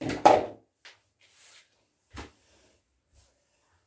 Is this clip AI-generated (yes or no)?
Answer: no